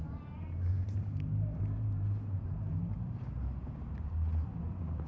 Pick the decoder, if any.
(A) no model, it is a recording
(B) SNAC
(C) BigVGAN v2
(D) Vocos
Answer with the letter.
C